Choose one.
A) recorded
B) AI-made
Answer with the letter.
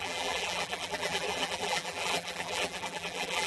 B